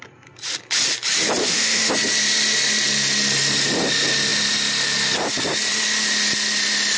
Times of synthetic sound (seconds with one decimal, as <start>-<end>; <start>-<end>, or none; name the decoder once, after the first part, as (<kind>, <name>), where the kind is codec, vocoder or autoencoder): 1.4-1.9 (autoencoder, DAC-VAE)